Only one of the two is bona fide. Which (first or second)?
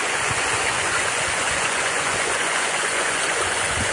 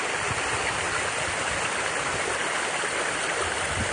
second